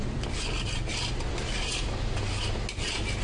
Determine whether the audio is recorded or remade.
recorded